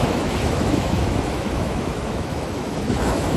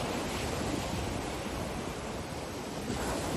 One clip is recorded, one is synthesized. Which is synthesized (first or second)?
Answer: first